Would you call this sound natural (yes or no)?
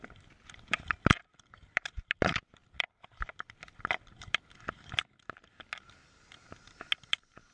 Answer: yes